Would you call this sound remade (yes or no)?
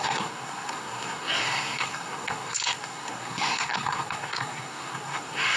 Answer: yes